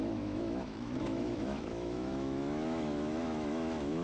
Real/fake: fake